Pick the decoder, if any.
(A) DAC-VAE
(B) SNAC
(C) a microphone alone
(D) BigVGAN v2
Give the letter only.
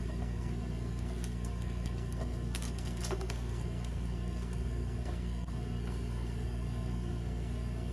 B